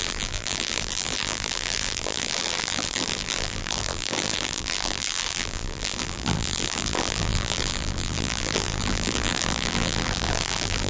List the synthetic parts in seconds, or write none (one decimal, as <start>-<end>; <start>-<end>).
0.0-10.9